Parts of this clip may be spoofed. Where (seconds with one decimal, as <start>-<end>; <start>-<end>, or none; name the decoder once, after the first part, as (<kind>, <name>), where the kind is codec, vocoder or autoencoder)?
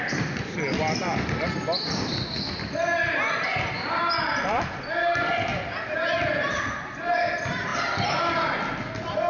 7.7-8.5 (vocoder, BigVGAN v2)